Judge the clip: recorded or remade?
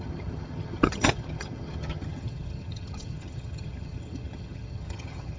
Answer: remade